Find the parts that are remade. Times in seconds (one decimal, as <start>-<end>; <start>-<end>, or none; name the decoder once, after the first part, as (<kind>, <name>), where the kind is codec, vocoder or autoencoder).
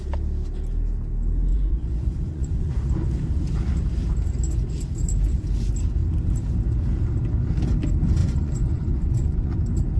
1.5-2.7 (vocoder, Vocos); 8.2-9.5